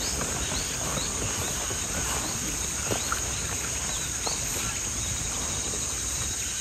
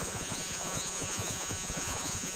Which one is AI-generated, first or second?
second